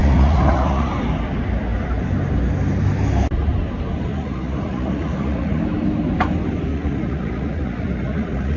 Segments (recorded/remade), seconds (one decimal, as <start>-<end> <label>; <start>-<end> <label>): 0.0-0.9 remade; 0.9-4.1 recorded; 4.1-5.6 remade; 5.6-6.7 recorded; 6.7-8.6 remade

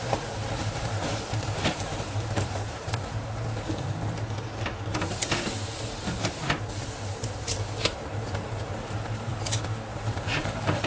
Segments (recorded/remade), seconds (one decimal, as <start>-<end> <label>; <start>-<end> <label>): 0.0-0.6 recorded; 0.6-3.3 remade; 3.3-4.9 recorded; 4.9-9.3 remade; 9.3-9.9 recorded; 9.9-10.5 remade; 10.5-10.9 recorded

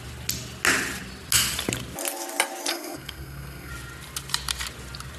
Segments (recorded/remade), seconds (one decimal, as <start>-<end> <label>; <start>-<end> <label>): 0.0-2.7 recorded; 2.7-3.7 remade; 3.7-5.2 recorded

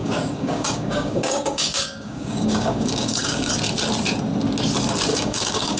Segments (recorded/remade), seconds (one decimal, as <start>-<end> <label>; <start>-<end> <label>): 0.0-3.5 remade; 3.5-5.1 recorded; 5.1-5.8 remade

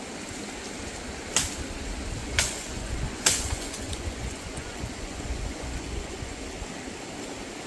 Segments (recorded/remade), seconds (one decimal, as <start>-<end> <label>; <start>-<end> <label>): 0.0-2.2 recorded; 2.2-6.4 remade; 6.4-7.7 recorded